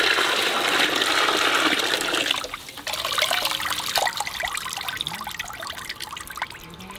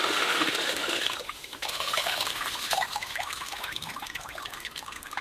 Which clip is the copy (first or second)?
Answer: second